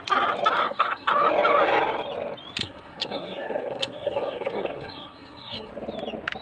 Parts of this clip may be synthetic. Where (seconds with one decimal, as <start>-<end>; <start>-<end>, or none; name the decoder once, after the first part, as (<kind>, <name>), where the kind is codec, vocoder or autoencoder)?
0.6-1.1 (codec, SNAC); 2.6-5.7